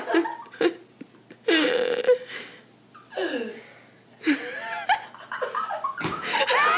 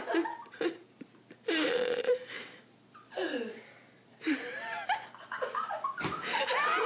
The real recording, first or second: first